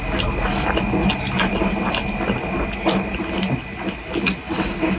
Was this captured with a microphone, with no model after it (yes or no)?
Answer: yes